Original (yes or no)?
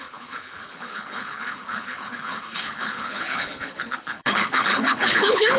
no